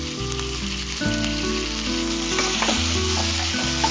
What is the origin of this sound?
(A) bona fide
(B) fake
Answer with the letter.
A